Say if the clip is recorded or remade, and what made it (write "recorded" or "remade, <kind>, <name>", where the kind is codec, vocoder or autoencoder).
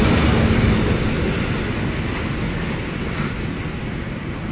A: recorded